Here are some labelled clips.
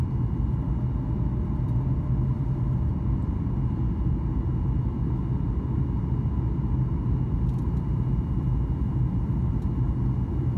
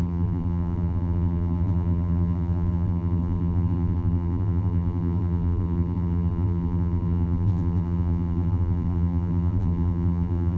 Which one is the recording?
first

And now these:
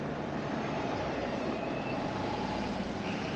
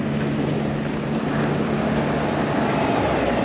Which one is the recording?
second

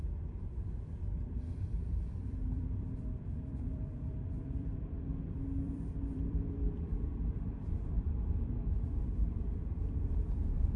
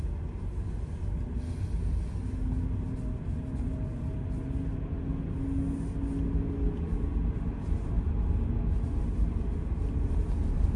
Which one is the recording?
second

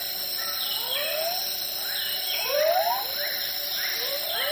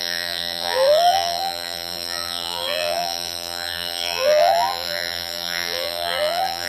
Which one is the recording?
first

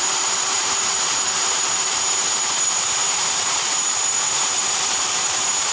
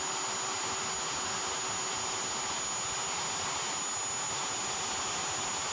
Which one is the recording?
second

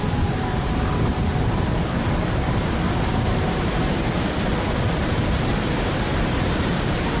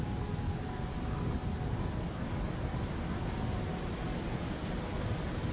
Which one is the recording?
second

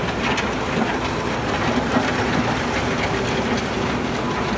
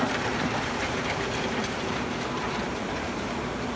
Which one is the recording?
first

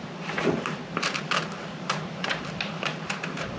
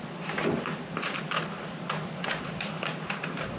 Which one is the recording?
second